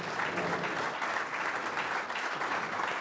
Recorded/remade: recorded